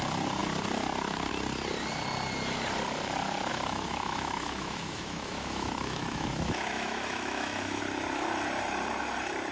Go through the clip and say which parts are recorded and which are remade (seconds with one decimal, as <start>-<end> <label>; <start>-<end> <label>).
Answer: 0.0-3.5 recorded; 3.5-7.8 remade; 7.8-9.5 recorded